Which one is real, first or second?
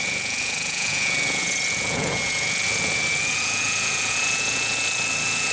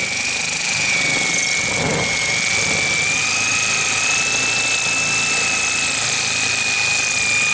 second